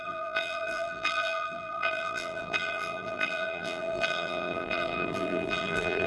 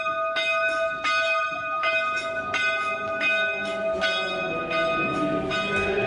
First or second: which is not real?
first